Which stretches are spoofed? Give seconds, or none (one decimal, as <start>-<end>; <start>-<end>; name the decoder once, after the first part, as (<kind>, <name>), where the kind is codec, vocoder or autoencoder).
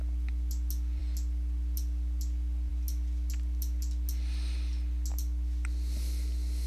none